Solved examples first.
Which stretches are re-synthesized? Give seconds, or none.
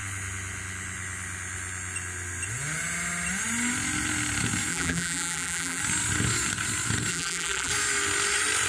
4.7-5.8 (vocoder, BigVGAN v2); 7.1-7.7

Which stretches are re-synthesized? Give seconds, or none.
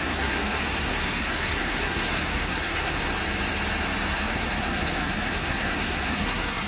0.0-3.1 (codec, SNAC); 4.1-6.7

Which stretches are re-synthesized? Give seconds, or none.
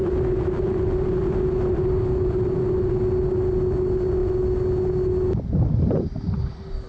none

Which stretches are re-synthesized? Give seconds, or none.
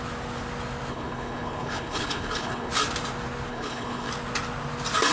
0.9-2.7 (codec, HILCodec); 3.5-4.1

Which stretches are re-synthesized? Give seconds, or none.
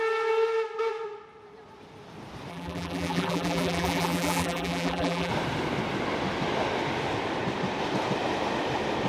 2.5-5.3 (vocoder, BigVGAN v2)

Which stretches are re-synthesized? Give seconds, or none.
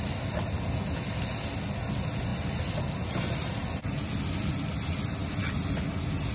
none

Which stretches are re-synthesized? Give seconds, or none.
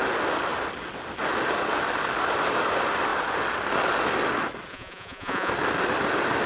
4.7-5.5 (vocoder, Vocos)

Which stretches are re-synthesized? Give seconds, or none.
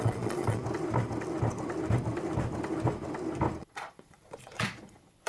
0.0-0.6 (vocoder, Vocos); 3.6-5.3